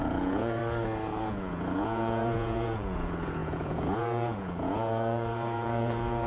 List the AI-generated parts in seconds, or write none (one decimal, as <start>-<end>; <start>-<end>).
0.0-0.6; 1.2-6.3